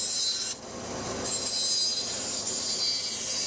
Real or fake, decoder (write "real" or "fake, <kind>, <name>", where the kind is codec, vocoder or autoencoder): real